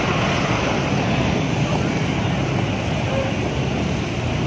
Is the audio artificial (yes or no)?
no